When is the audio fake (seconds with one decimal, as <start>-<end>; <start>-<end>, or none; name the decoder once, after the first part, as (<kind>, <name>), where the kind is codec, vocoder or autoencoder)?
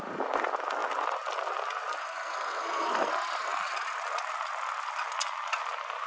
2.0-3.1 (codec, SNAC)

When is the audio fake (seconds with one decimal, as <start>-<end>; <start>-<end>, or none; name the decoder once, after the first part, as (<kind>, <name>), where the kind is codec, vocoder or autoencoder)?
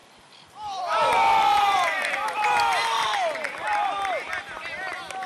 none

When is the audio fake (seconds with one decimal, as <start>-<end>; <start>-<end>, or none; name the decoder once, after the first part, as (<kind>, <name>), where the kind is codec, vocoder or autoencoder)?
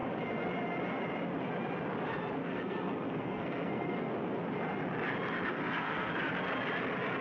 2.4-4.1 (codec, SNAC); 5.5-6.1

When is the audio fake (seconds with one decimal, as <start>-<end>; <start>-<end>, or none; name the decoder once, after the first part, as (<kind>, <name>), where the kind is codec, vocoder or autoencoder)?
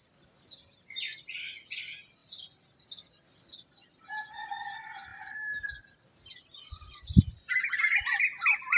none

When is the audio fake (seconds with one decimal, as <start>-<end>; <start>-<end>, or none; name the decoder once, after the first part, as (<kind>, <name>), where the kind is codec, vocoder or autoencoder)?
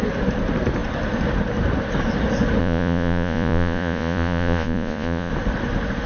2.6-5.3 (vocoder, Vocos)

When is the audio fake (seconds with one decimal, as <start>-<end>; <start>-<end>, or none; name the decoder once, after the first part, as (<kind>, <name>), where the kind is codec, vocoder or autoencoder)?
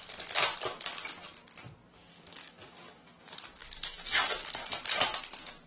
2.1-4.7 (codec, DAC)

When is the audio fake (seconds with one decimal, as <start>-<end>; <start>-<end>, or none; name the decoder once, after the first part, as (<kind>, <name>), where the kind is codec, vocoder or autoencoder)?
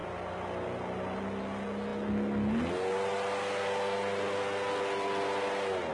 none